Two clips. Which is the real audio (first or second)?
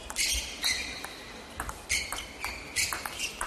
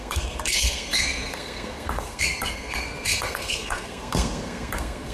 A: first